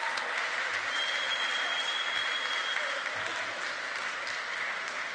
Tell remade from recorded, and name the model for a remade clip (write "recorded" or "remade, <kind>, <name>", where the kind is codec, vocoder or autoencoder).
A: recorded